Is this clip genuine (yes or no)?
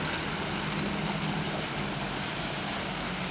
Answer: yes